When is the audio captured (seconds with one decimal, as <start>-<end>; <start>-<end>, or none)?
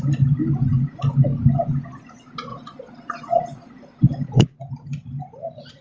0.0-2.5; 3.7-5.8